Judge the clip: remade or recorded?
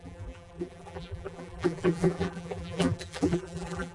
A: remade